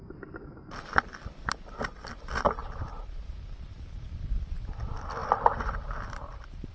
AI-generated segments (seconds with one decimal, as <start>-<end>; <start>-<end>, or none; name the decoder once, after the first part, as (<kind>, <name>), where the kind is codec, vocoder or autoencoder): 2.6-4.5 (vocoder, BigVGAN v2); 5.2-5.7